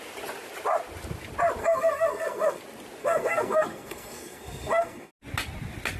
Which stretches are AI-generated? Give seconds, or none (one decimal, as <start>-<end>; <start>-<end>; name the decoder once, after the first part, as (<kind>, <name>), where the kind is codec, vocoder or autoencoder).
1.6-2.6 (codec, SNAC); 3.0-5.1